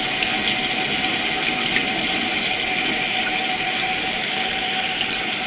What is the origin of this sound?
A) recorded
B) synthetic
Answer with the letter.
A